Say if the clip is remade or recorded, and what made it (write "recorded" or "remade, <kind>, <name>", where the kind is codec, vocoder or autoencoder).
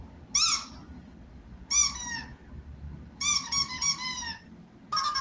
recorded